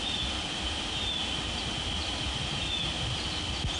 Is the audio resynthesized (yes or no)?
yes